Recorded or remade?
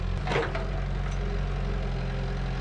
recorded